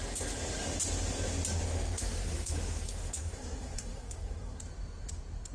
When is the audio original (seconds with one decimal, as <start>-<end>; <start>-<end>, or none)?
0.0-1.9; 4.6-5.5